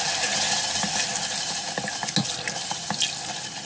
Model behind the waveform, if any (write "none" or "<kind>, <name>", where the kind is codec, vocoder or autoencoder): none